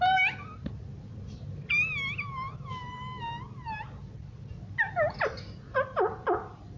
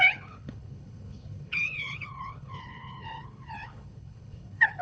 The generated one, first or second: second